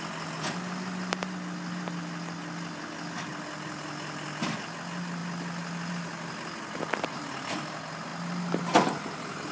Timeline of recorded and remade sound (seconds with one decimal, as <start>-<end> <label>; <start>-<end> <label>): 0.0-9.5 recorded